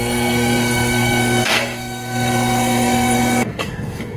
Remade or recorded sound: remade